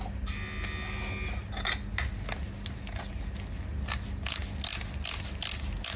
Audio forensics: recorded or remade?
recorded